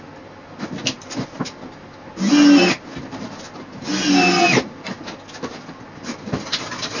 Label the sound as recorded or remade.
recorded